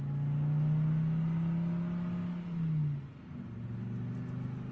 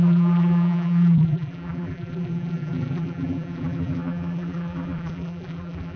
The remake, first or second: second